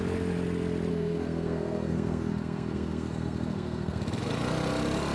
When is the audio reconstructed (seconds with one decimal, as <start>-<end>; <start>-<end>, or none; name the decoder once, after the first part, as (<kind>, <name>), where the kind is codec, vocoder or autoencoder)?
0.9-4.0 (codec, SNAC)